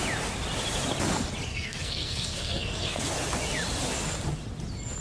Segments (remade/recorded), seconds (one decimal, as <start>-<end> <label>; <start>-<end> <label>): 0.0-1.5 recorded; 1.5-3.0 remade; 3.0-5.0 recorded